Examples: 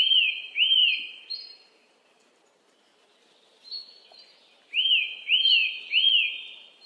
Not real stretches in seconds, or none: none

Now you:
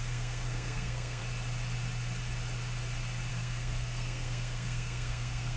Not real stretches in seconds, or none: 0.0-1.2 (codec, SNAC); 3.3-5.6

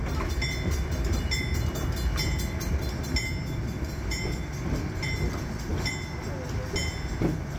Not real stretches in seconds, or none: none

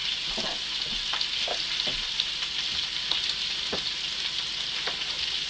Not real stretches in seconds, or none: none

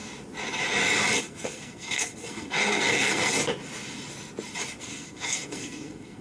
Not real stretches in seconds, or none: 1.2-3.4 (codec, SNAC); 4.8-6.2

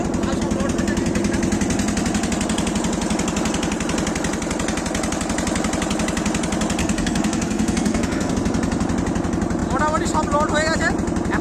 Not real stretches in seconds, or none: 6.8-8.3 (codec, SNAC)

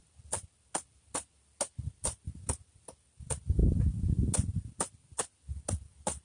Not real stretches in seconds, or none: none

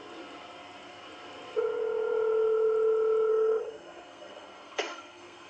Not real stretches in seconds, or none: 3.3-5.5 (codec, SNAC)